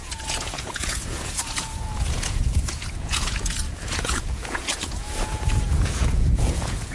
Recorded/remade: remade